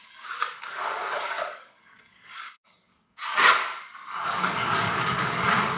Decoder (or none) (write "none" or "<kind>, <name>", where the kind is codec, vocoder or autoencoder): codec, DAC